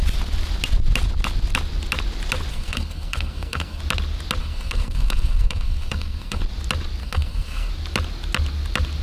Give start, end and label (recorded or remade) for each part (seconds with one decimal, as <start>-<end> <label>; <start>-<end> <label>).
0.0-2.5 recorded; 2.5-3.8 remade; 3.8-4.4 recorded; 4.4-6.4 remade; 6.4-7.0 recorded; 7.0-7.7 remade; 7.7-9.0 recorded